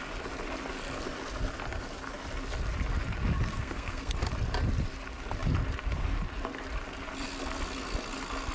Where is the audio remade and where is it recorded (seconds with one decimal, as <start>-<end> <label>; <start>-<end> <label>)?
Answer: 0.0-3.5 recorded; 3.5-4.1 remade; 4.1-8.5 recorded